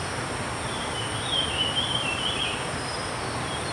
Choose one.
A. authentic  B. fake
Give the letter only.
B